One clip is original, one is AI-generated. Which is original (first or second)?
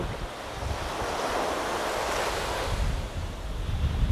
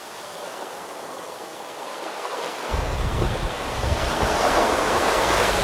first